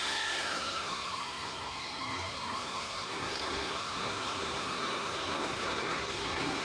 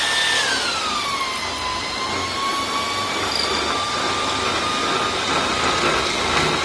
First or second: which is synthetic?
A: first